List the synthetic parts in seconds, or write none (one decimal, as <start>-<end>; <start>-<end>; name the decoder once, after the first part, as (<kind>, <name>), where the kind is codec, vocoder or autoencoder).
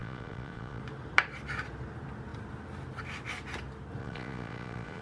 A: 0.0-0.8 (vocoder, Vocos); 4.0-5.0